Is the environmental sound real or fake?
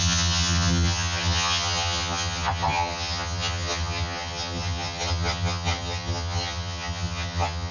fake